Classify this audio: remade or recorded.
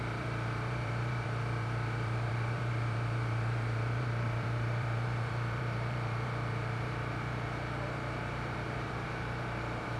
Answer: remade